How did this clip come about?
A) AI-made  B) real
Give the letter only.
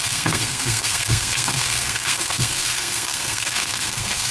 A